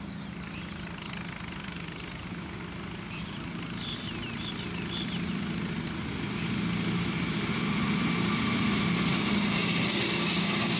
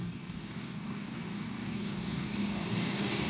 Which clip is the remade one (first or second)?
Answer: second